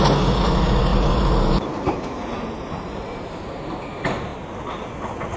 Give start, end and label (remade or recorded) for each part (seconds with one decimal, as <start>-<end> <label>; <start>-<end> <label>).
0.0-0.9 recorded; 0.9-3.8 remade; 3.8-5.4 recorded